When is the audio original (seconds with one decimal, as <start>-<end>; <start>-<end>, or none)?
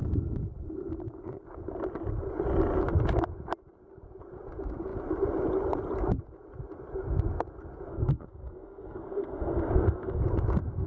0.0-7.9; 10.2-10.9